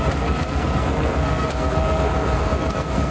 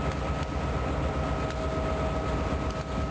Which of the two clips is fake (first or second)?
first